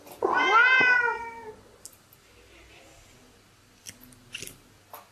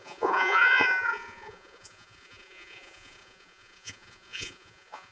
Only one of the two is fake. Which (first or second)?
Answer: second